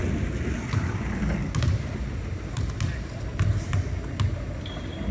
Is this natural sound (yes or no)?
yes